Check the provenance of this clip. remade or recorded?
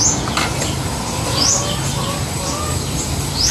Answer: recorded